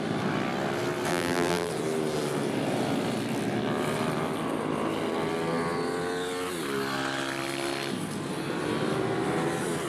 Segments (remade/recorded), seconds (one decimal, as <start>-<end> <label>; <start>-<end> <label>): 0.0-1.1 recorded; 1.1-1.7 remade; 1.7-9.9 recorded